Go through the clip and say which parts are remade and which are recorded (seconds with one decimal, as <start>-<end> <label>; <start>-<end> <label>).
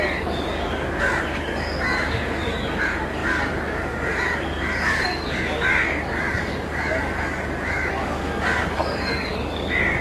0.0-10.0 remade